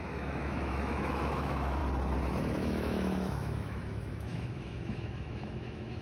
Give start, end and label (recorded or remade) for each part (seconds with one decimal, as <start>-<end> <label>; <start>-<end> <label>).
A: 0.0-1.8 remade; 1.8-2.4 recorded; 2.4-6.0 remade